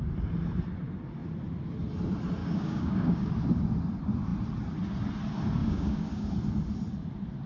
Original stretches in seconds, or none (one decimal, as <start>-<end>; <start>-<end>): 0.0-2.4; 3.3-5.6; 6.3-7.5